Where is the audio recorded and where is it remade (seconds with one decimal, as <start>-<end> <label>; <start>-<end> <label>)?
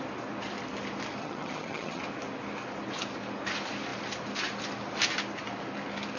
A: 0.0-1.2 recorded; 1.2-2.0 remade; 2.0-6.2 recorded